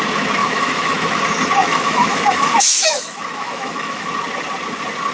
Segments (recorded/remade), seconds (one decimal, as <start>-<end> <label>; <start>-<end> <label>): 0.0-0.4 recorded; 0.4-1.2 remade; 1.2-1.6 recorded; 1.6-4.1 remade; 4.1-5.1 recorded